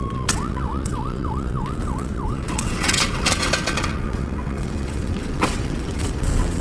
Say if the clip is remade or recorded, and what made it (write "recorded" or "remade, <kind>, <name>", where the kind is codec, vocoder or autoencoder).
remade, vocoder, WaveNeXt